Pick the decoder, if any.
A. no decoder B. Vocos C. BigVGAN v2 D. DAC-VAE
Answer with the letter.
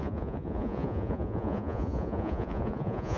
B